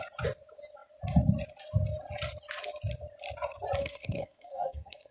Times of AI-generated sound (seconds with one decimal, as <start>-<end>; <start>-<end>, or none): 3.8-5.1